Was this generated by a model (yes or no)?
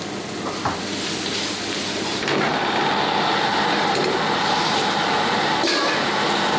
no